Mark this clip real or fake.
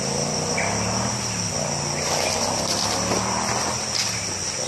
real